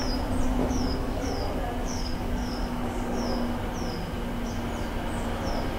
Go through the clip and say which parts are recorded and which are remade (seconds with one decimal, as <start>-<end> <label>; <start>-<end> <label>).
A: 0.0-0.6 recorded; 0.6-1.3 remade; 1.3-1.8 recorded; 1.8-3.2 remade; 3.2-5.8 recorded